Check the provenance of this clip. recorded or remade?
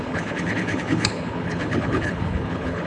remade